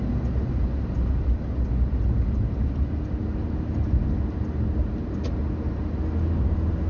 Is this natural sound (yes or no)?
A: yes